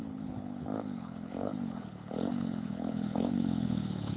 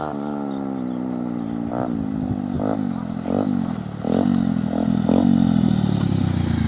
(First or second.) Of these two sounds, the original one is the second